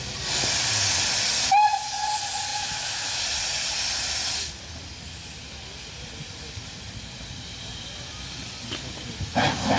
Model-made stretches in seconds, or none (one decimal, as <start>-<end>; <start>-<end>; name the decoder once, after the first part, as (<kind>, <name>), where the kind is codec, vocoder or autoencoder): 2.5-3.2 (autoencoder, DAC-VAE)